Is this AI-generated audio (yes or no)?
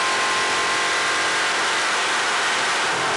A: yes